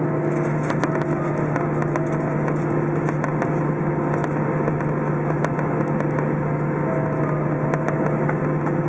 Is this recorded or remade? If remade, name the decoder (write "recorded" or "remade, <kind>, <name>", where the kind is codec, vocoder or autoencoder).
recorded